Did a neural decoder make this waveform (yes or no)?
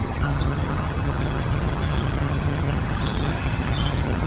yes